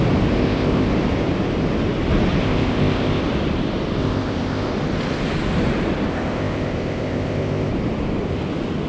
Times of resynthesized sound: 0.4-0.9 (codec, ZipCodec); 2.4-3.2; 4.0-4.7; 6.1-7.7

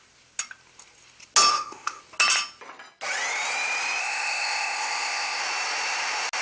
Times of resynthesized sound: 1.5-2.0 (codec, ZipCodec); 4.0-5.4